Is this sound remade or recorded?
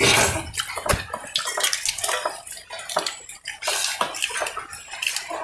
recorded